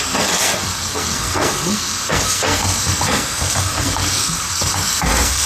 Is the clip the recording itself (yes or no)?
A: no